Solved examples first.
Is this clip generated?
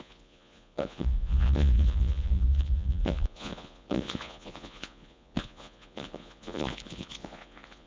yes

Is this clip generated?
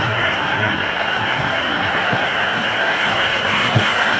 yes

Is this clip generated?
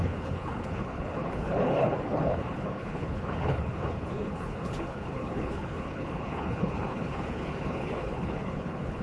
yes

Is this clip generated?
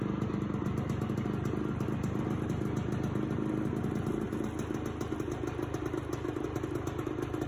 no